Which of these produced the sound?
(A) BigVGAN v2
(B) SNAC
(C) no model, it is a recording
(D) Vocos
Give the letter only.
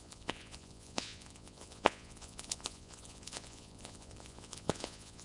D